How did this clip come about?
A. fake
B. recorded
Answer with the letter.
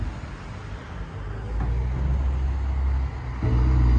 B